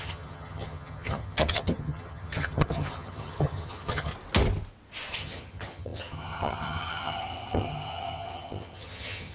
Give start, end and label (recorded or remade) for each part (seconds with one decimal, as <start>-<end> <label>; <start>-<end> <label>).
0.0-4.1 remade; 4.1-5.1 recorded; 5.1-9.3 remade